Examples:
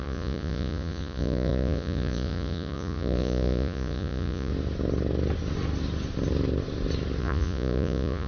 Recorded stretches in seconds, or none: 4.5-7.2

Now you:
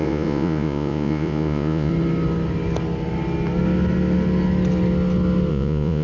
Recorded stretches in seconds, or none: 1.9-5.5

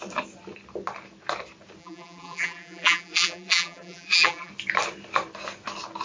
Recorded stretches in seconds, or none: 0.0-1.8; 4.5-6.0

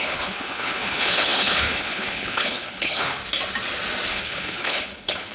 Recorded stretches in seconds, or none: 3.2-4.1

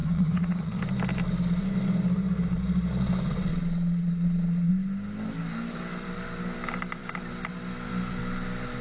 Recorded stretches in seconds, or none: 0.8-3.5; 4.7-8.8